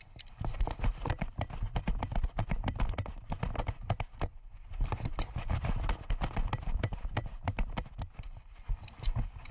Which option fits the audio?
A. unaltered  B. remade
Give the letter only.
B